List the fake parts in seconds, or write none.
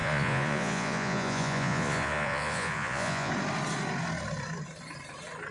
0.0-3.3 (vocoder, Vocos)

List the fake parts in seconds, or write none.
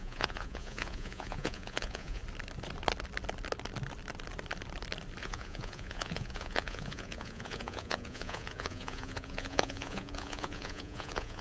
0.0-2.2 (vocoder, Vocos); 5.2-11.4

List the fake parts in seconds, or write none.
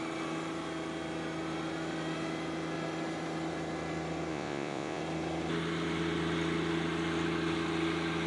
4.3-5.0 (vocoder, Vocos)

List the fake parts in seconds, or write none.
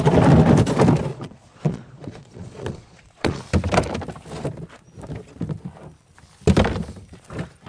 1.1-3.4 (vocoder, Vocos)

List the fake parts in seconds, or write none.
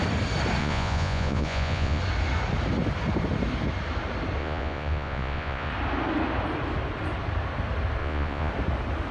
0.6-2.0 (vocoder, Vocos); 4.4-5.7; 8.0-8.5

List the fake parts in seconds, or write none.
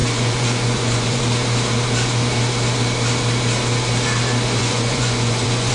0.0-1.2 (vocoder, Vocos); 4.6-5.7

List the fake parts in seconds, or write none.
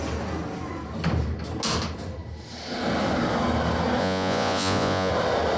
4.0-5.1 (vocoder, Vocos)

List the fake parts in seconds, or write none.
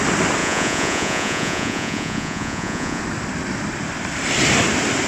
0.4-3.0 (vocoder, Vocos)